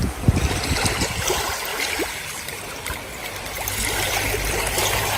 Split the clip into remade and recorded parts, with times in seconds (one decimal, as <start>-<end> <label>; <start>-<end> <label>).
0.0-5.2 recorded